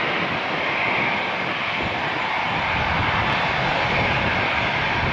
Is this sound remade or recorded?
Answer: recorded